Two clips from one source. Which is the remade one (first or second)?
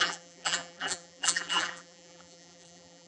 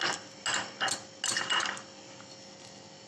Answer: first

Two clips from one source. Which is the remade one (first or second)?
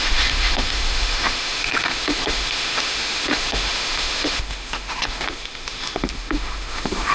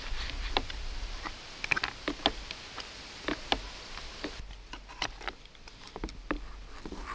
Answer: first